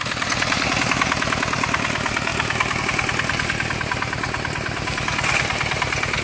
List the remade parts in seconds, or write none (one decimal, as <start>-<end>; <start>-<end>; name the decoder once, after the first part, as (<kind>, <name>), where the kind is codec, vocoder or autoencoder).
none